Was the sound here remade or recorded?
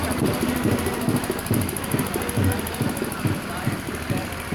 recorded